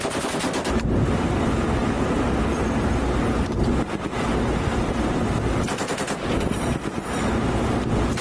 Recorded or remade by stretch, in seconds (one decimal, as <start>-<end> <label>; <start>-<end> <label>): 0.0-8.2 recorded